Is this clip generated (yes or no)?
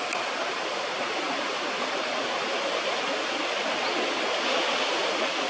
no